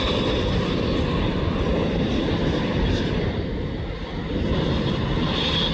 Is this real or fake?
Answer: real